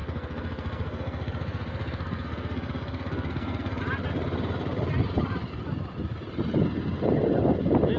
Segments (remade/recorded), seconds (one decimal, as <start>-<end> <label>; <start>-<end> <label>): 0.0-3.8 remade; 3.8-8.0 recorded